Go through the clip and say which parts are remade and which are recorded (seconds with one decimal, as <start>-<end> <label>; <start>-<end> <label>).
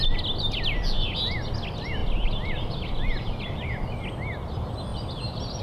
0.0-2.0 recorded; 2.0-4.1 remade; 4.1-4.9 recorded; 4.9-5.6 remade